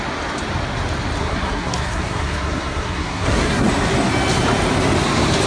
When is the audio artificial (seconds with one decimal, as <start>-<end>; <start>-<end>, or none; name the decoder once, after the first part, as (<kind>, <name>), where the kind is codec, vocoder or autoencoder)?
1.2-3.7 (codec, SNAC)